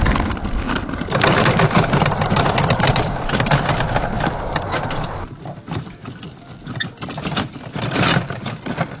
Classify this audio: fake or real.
real